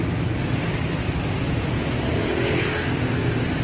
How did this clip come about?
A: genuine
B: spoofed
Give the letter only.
A